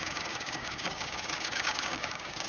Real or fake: fake